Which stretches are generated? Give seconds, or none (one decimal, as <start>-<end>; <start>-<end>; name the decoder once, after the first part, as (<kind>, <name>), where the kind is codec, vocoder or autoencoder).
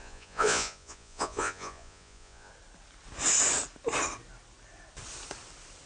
0.0-2.5 (vocoder, Vocos)